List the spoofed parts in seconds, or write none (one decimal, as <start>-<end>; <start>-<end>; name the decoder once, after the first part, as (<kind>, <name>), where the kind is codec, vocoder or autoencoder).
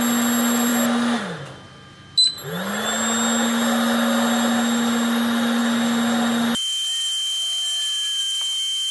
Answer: none